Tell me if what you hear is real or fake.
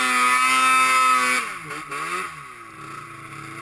real